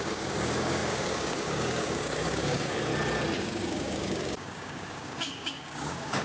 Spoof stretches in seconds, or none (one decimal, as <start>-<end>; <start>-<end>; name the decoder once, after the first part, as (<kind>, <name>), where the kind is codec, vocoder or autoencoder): 0.0-2.9 (codec, DAC); 3.4-6.2